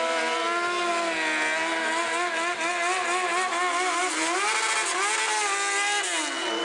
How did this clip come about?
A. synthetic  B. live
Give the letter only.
B